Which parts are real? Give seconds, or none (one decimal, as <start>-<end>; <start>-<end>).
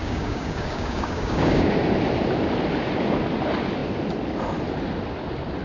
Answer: 1.7-5.6